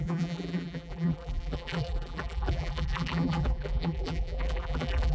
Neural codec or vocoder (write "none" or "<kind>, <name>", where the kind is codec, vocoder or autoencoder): vocoder, BigVGAN v2